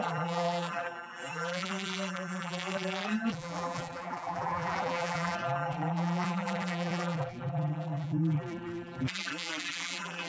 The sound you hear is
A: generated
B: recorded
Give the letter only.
A